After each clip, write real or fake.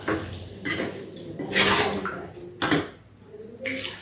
real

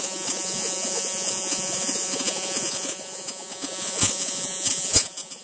fake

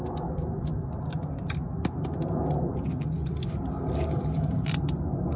real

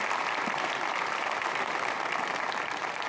fake